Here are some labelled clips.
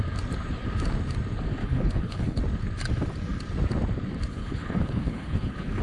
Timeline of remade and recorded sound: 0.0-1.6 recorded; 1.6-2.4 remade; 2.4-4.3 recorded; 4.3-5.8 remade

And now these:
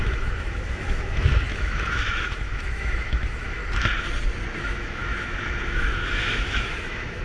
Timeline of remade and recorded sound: 0.0-3.6 remade; 3.6-4.6 recorded; 4.6-7.2 remade

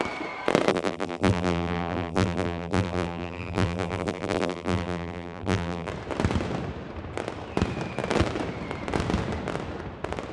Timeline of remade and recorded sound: 0.0-0.7 recorded; 0.7-5.9 remade; 5.9-10.3 recorded

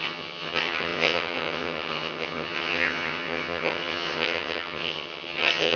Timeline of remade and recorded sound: 0.0-5.8 remade

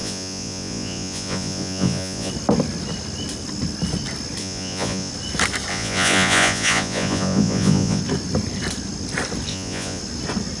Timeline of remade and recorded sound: 0.0-2.3 remade; 2.3-4.4 recorded; 4.4-5.1 remade; 5.1-5.7 recorded; 5.7-8.0 remade; 8.0-9.5 recorded; 9.5-10.0 remade; 10.0-10.6 recorded

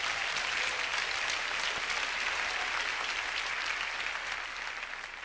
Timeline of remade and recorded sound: 0.0-5.2 recorded